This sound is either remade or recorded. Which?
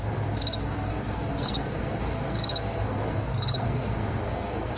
remade